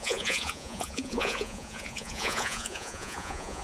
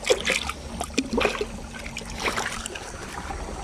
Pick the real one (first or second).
second